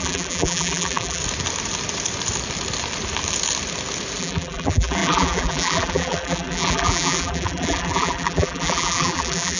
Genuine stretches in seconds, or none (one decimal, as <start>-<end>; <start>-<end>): 1.2-4.2